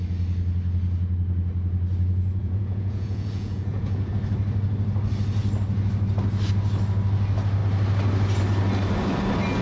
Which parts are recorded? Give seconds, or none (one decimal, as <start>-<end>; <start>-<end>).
0.0-2.4; 4.1-9.6